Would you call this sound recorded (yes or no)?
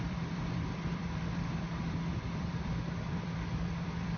no